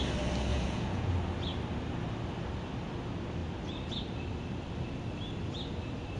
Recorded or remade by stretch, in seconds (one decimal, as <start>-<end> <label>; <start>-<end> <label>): 0.0-0.5 recorded; 0.5-1.1 remade; 1.1-6.2 recorded